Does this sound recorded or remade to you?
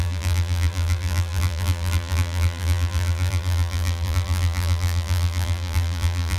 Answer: remade